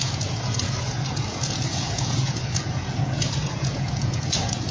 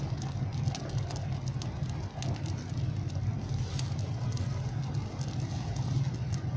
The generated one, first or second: first